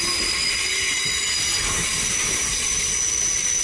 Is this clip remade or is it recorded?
recorded